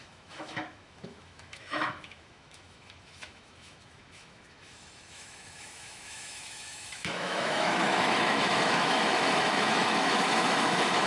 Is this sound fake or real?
fake